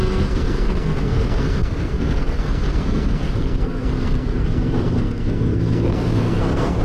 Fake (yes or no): yes